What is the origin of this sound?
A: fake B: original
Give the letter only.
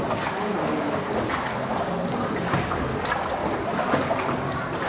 B